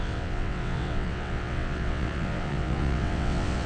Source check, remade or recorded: remade